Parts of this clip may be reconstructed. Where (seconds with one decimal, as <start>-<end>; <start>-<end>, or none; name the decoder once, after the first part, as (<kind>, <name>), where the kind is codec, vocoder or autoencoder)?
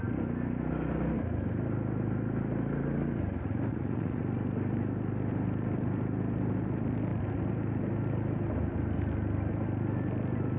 3.7-4.2 (vocoder, Vocos)